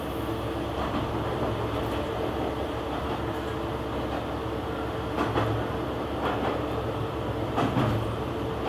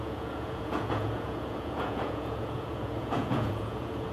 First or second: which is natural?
first